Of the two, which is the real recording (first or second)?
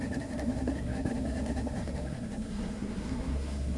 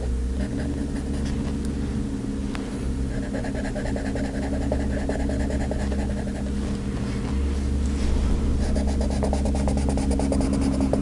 second